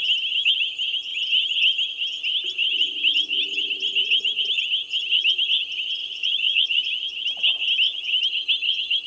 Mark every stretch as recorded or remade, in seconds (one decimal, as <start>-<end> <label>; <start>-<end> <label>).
0.0-6.0 recorded; 6.0-6.9 remade; 6.9-9.1 recorded